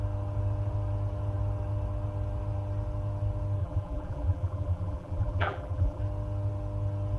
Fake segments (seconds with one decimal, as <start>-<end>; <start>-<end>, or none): 3.6-6.0